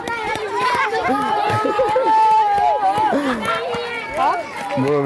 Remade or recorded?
recorded